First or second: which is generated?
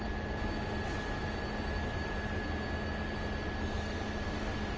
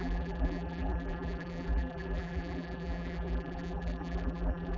second